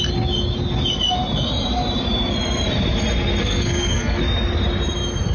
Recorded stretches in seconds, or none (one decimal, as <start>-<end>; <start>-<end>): 0.0-3.4; 4.2-5.3